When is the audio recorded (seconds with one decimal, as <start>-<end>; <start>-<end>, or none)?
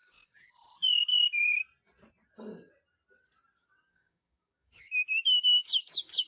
0.5-3.6